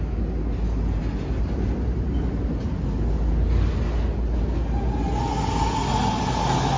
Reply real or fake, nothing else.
real